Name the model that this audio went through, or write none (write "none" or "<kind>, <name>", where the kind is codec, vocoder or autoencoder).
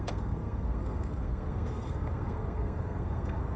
codec, SNAC